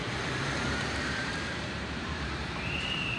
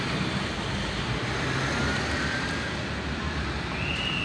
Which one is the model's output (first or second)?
first